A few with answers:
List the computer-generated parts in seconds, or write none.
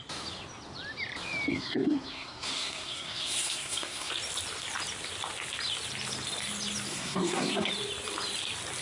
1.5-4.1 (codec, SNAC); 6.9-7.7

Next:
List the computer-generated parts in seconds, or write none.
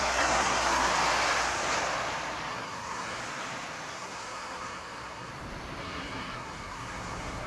0.0-0.9 (codec, SNAC); 2.5-3.2; 3.9-5.3; 5.8-7.5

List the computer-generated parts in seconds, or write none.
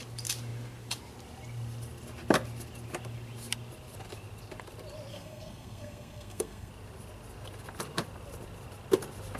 5.1-6.7 (codec, SNAC)